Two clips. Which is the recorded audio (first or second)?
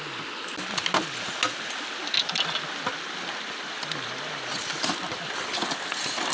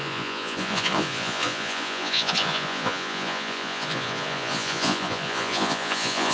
first